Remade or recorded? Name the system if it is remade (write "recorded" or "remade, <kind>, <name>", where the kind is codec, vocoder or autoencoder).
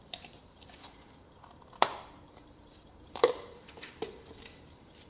remade, vocoder, BigVGAN v2